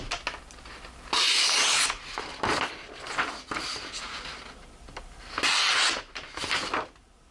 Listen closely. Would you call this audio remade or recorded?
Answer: recorded